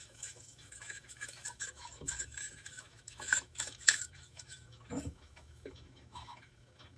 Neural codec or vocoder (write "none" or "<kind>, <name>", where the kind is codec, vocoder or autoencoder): autoencoder, DAC-VAE